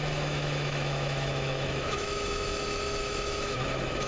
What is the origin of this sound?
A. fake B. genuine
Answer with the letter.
A